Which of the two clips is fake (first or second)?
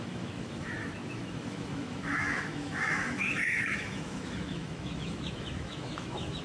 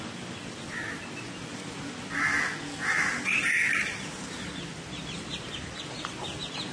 first